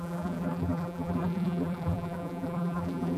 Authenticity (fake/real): fake